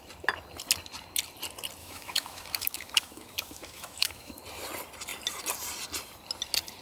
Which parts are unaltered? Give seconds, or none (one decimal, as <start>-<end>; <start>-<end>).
0.0-1.8; 4.4-6.8